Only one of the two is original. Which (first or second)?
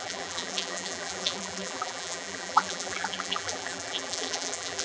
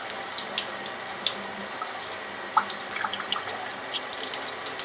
second